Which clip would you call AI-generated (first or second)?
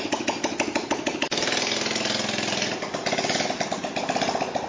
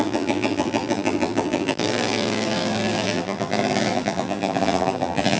second